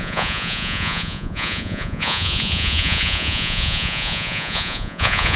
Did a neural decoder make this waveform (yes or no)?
yes